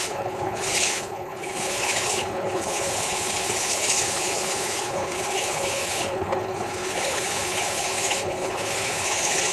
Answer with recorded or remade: remade